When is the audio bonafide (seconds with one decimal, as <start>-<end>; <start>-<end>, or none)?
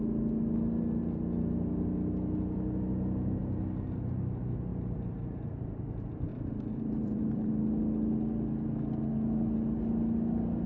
0.0-4.7; 5.8-6.3; 7.5-10.7